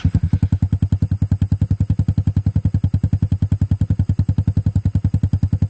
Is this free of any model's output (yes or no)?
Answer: yes